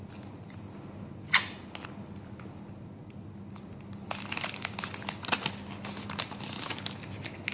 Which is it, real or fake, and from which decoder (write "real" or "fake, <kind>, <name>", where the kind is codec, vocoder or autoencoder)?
real